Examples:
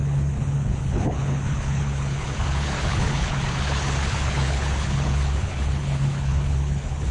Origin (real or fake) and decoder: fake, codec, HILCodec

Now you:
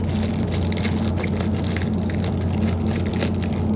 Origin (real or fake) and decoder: real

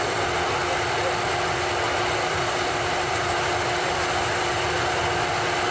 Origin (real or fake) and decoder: real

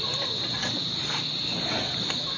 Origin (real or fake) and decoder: real